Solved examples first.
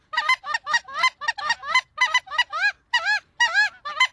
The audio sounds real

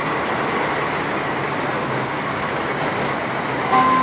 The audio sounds real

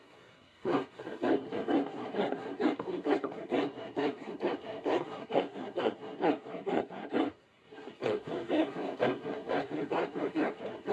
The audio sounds fake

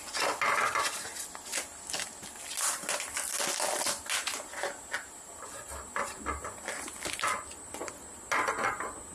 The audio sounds real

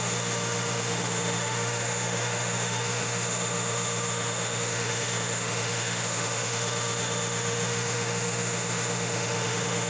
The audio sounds fake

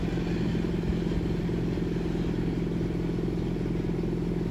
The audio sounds real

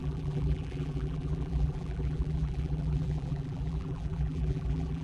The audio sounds fake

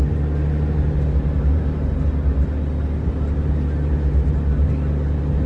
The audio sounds real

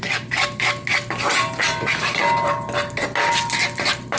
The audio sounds real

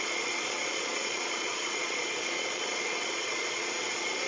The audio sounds fake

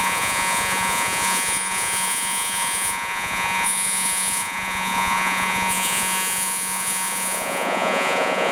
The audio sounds fake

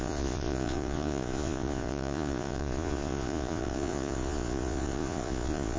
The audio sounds fake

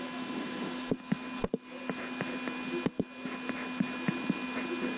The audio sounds real